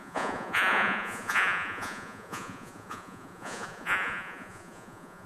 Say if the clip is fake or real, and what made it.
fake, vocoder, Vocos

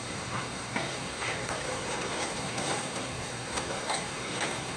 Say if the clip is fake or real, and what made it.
fake, codec, SNAC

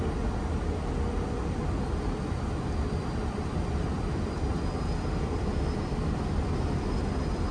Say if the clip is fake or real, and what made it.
real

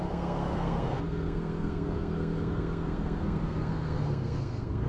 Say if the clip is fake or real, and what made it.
fake, codec, SNAC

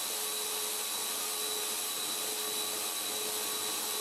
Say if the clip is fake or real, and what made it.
real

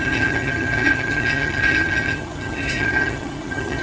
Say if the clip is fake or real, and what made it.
fake, vocoder, HiFi-GAN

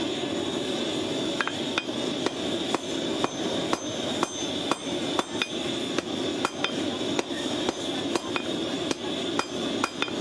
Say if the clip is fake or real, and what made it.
real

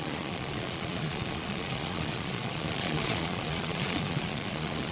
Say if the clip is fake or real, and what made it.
fake, vocoder, Vocos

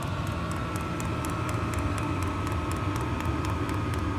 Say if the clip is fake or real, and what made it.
real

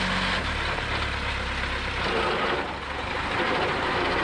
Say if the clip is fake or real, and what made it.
real